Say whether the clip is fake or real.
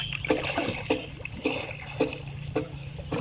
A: real